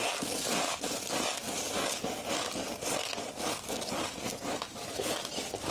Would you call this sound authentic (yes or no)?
yes